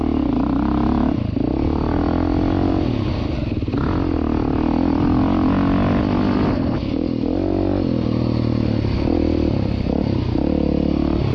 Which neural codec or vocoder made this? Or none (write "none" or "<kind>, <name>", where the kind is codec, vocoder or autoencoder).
none